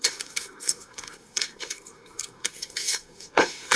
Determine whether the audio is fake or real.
fake